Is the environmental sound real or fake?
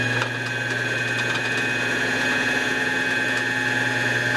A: real